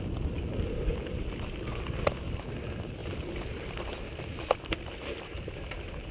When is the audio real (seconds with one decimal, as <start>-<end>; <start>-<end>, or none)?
0.0-6.1